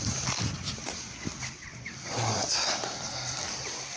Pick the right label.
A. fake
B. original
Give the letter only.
B